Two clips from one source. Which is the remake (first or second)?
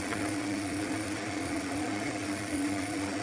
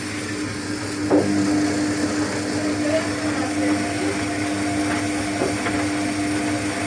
first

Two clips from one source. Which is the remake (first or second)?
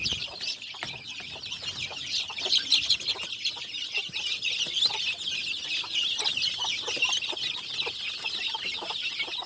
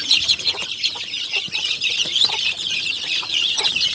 second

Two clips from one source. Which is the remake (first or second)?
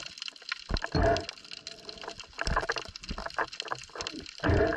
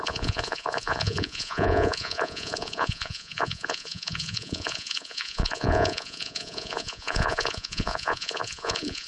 second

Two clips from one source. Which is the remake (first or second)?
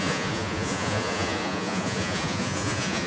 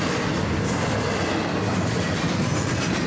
first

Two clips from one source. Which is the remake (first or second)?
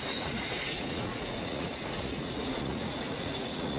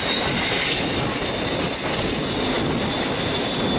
first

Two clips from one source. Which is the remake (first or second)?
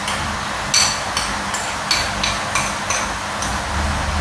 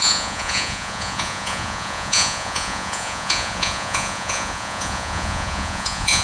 second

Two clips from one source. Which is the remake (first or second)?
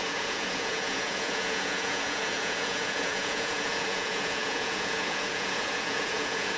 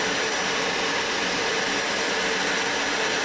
first